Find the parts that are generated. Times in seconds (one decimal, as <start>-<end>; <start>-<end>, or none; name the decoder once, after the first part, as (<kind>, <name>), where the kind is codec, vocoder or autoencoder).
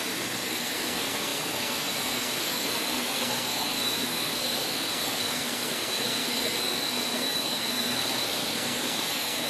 0.0-9.5 (codec, SNAC)